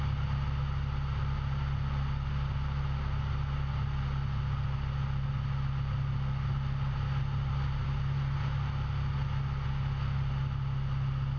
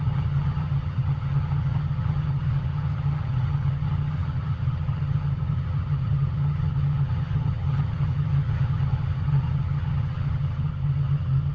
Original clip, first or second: first